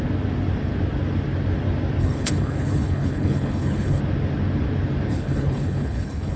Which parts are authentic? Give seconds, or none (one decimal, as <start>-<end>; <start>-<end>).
0.0-2.0; 4.0-5.1